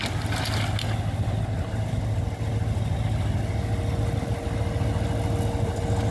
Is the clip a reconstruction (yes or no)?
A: no